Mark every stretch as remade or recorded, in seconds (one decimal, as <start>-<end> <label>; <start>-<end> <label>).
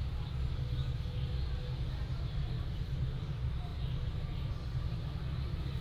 0.0-5.8 recorded